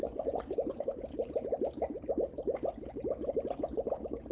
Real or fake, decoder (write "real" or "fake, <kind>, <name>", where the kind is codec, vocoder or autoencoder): real